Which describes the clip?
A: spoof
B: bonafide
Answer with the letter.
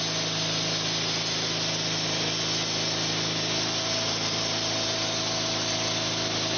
B